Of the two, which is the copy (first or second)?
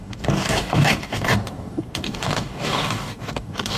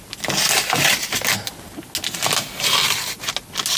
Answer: first